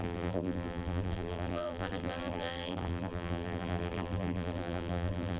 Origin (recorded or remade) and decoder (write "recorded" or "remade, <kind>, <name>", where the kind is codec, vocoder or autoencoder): remade, vocoder, BigVGAN v2